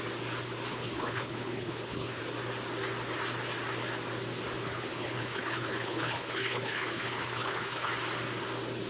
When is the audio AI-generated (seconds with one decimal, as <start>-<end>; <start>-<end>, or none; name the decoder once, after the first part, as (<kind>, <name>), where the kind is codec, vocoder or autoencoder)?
0.7-2.2 (codec, HILCodec); 4.6-7.9